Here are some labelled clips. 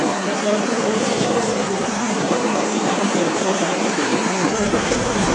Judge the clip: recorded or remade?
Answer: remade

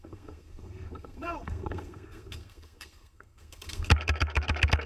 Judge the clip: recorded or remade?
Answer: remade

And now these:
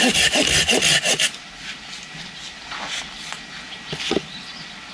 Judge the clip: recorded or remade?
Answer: recorded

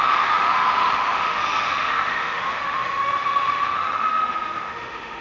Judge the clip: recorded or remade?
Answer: remade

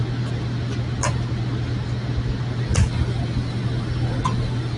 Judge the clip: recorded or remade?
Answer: recorded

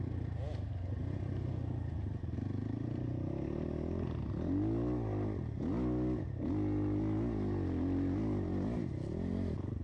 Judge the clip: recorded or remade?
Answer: recorded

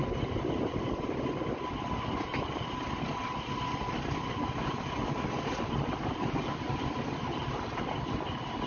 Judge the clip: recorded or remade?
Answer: recorded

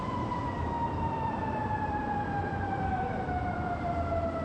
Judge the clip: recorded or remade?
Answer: remade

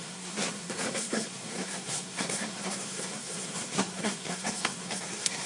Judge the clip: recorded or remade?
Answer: remade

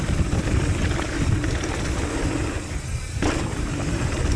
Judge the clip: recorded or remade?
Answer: recorded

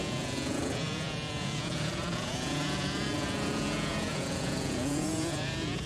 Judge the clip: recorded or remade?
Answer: remade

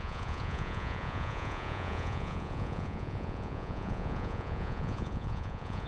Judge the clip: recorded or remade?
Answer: remade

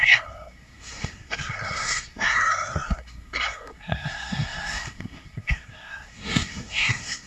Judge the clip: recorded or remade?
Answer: remade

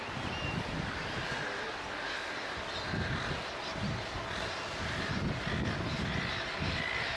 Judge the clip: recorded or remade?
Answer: recorded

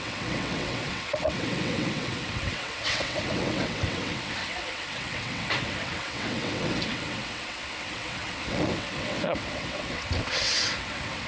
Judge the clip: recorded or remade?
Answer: remade